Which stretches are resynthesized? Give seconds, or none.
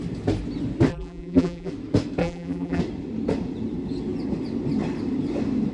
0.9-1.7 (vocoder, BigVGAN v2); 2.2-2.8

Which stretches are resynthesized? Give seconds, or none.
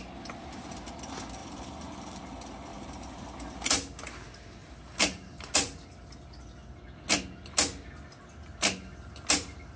1.4-2.2 (vocoder, BigVGAN v2); 2.7-3.3; 4.6-5.5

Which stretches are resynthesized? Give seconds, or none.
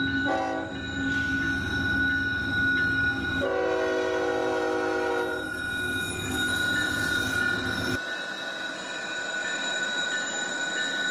9.4-10.6 (vocoder, BigVGAN v2)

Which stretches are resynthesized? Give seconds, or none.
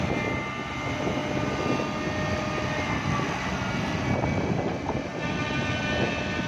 none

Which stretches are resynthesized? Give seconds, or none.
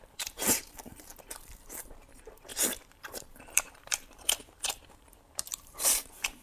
0.0-1.1 (vocoder, BigVGAN v2); 1.6-6.4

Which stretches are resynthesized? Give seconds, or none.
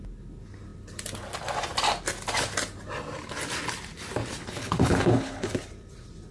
4.4-5.5 (codec, HILCodec)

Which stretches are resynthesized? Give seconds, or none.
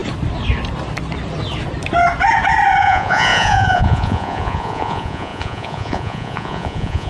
2.8-7.1 (vocoder, Vocos)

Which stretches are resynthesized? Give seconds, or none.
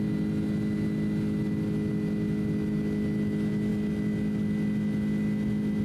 none